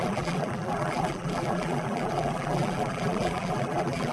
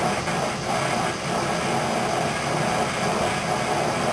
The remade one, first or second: first